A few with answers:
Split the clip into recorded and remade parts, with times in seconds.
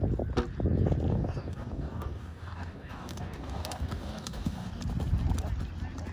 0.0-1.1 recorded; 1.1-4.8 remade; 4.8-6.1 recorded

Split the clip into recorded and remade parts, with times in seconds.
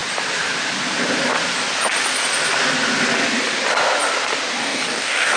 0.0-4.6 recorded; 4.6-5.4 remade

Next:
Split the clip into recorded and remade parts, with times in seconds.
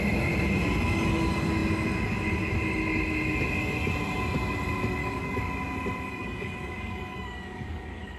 0.0-5.0 recorded; 5.0-5.5 remade; 5.5-6.1 recorded; 6.1-8.2 remade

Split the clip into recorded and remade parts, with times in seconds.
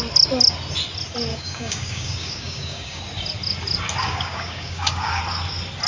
0.0-1.3 recorded; 1.3-3.0 remade; 3.0-4.0 recorded; 4.0-5.2 remade; 5.2-5.9 recorded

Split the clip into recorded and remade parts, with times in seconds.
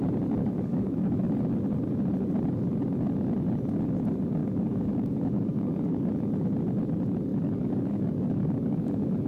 0.0-0.4 recorded; 0.4-1.3 remade; 1.3-4.4 recorded; 4.4-6.1 remade; 6.1-7.3 recorded; 7.3-9.3 remade